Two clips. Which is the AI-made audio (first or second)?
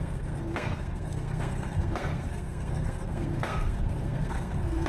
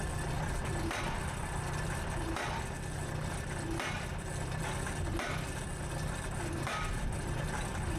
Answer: first